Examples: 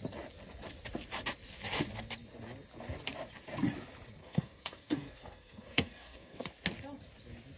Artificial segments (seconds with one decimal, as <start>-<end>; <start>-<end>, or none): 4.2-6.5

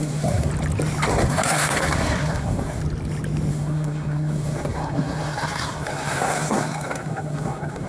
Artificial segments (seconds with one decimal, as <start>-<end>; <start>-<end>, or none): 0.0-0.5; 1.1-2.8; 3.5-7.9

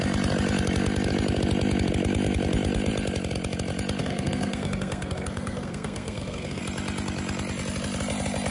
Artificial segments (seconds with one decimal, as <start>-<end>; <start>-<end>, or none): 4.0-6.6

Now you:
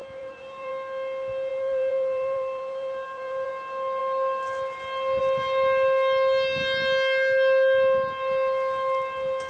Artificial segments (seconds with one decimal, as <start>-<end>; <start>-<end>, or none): 0.0-0.7; 1.5-3.5